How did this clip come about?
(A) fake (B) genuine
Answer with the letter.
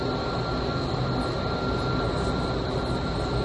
B